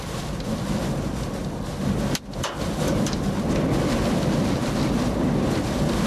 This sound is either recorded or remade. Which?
recorded